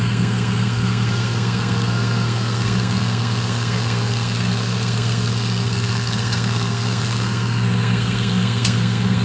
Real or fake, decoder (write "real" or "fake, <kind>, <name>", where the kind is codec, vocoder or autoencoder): fake, codec, SNAC